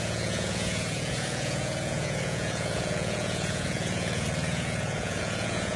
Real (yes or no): no